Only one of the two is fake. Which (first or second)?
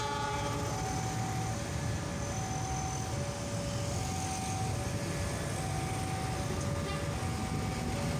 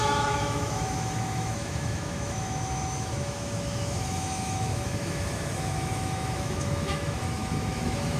second